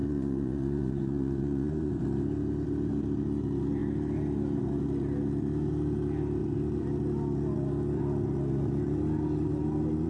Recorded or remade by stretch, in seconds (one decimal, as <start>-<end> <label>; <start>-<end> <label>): 0.0-1.9 remade; 1.9-10.1 recorded